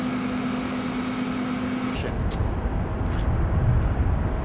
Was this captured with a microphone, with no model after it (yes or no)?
yes